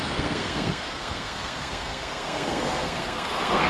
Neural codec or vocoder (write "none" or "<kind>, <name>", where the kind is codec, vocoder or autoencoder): codec, SNAC